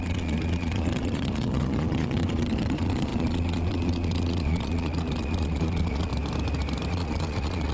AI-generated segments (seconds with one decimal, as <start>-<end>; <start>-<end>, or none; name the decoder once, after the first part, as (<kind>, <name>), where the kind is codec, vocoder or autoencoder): 0.0-6.1 (vocoder, Vocos); 6.9-7.7

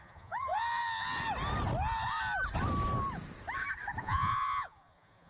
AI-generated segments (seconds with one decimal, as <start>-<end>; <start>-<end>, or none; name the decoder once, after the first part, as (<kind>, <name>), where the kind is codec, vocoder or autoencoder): 0.0-0.8 (vocoder, Vocos); 4.0-5.3

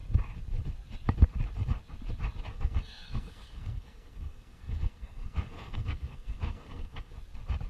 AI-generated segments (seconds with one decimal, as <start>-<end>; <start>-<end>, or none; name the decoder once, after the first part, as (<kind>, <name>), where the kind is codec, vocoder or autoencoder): 2.5-7.1 (codec, SNAC)

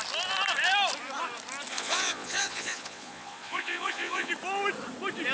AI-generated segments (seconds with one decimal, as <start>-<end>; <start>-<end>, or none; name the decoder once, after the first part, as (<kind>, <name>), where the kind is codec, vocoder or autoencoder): 1.7-4.3 (vocoder, Vocos)

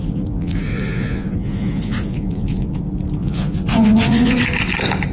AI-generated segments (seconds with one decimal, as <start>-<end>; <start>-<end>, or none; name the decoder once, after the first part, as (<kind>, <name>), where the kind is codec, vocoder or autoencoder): 0.0-2.8 (vocoder, Vocos); 3.2-4.4

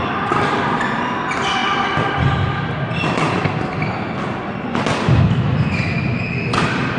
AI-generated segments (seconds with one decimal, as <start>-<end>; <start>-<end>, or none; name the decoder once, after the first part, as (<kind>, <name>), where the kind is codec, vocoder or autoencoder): none